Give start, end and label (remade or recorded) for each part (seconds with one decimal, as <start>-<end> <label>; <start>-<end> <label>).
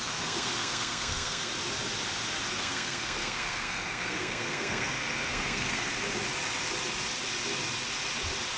0.0-1.5 remade; 1.5-2.5 recorded; 2.5-5.9 remade; 5.9-8.6 recorded